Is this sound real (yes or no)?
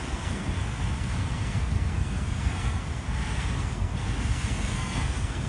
no